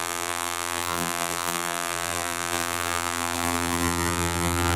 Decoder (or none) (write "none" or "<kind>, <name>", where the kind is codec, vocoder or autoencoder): vocoder, BigVGAN v2